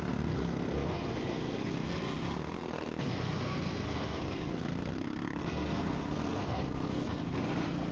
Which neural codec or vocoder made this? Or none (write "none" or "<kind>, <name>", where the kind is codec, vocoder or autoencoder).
codec, SNAC